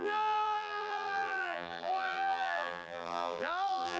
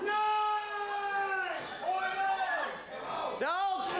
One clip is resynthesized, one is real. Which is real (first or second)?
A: second